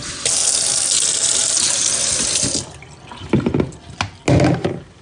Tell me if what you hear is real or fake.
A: real